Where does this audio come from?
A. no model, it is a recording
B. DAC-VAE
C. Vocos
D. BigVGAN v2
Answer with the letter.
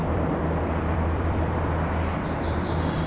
D